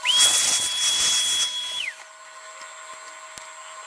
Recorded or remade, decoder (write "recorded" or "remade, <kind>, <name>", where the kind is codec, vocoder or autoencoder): recorded